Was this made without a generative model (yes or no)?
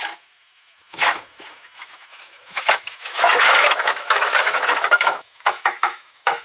no